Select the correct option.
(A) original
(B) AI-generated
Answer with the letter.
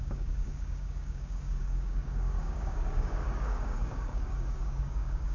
B